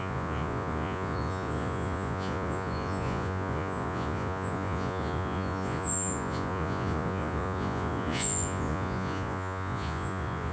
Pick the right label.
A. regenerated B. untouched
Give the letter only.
A